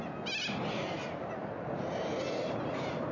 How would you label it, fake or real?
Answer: real